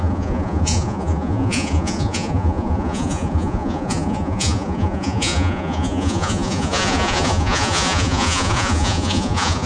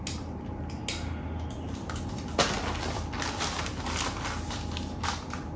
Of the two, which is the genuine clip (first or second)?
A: second